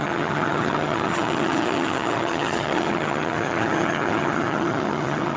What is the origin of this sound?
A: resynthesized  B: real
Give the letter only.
A